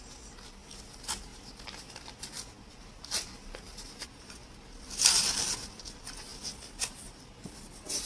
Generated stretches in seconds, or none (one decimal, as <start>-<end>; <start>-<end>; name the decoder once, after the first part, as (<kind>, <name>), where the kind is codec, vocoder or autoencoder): none